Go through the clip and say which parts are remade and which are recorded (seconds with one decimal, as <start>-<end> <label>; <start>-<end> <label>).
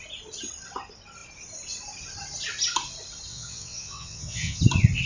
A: 0.0-3.3 recorded; 3.3-4.6 remade; 4.6-5.1 recorded